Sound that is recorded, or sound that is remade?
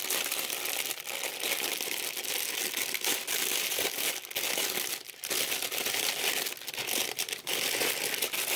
recorded